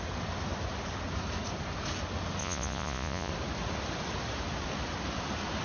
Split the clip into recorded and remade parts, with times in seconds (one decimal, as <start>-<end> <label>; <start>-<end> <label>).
0.0-2.4 recorded; 2.4-3.3 remade; 3.3-5.6 recorded